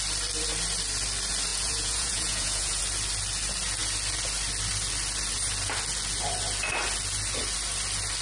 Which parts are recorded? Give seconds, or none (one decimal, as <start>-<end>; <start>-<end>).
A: 0.0-1.5; 2.8-8.2